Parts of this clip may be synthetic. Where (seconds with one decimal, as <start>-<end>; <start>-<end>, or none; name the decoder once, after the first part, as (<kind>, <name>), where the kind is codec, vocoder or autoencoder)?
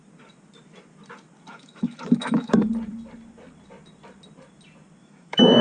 1.5-2.7 (autoencoder, DAC-VAE); 5.0-5.6